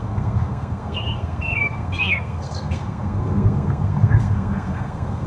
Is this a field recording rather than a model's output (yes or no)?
no